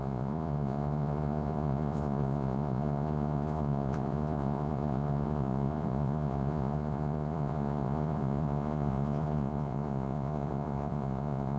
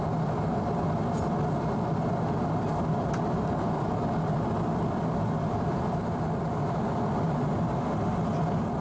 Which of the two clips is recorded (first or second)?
second